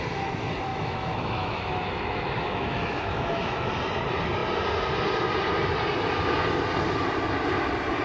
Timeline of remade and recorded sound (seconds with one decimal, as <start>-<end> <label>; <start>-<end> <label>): 0.0-0.7 recorded; 0.7-3.7 remade; 3.7-8.0 recorded